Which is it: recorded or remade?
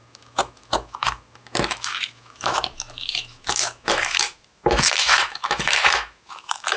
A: remade